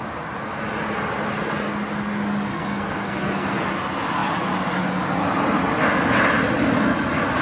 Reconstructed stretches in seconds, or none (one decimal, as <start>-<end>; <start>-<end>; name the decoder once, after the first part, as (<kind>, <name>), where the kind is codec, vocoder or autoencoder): 2.5-3.6 (codec, SNAC)